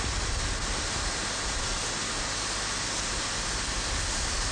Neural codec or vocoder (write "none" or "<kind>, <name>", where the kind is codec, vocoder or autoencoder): none